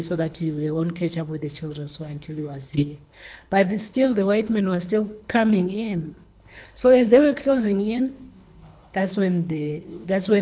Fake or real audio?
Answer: fake